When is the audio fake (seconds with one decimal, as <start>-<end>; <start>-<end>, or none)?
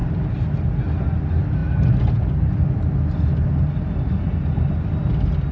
none